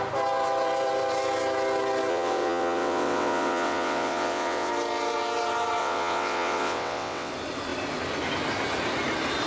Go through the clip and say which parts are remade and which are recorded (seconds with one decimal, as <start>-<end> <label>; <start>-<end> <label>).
0.0-2.1 recorded; 2.1-4.7 remade; 4.7-5.8 recorded; 5.8-7.3 remade; 7.3-9.5 recorded